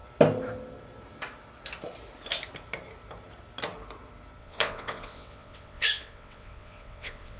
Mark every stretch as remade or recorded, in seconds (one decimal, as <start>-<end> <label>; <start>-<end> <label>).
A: 0.0-4.4 recorded; 4.4-7.4 remade